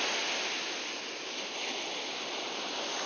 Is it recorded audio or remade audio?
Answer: recorded